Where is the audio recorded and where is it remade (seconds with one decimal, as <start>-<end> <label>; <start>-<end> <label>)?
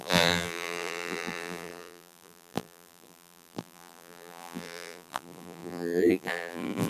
0.0-6.9 remade